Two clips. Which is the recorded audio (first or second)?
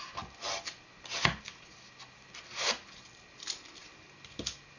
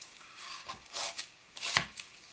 first